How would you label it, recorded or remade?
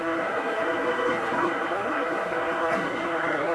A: remade